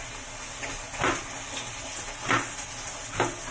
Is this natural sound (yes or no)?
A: yes